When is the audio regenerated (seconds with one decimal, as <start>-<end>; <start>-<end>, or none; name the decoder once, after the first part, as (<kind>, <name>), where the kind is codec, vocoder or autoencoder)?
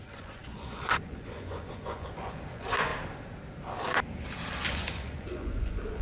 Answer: 0.0-2.9 (vocoder, Vocos); 4.7-6.0